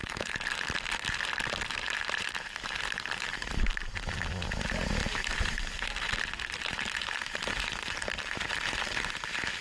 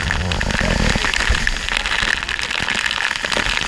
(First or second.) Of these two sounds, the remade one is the first